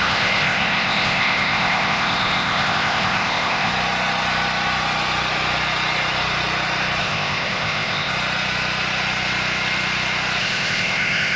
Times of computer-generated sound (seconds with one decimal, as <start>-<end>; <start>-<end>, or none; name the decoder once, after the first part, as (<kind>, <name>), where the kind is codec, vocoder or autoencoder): 0.0-3.7 (codec, ZipCodec); 7.0-8.1; 10.4-11.4